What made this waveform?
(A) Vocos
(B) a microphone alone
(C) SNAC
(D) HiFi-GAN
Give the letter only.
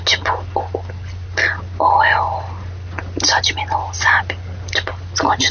B